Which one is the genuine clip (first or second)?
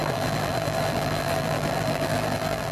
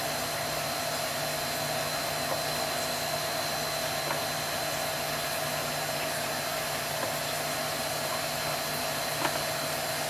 second